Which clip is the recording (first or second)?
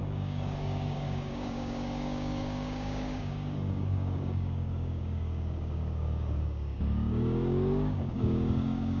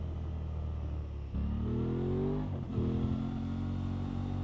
second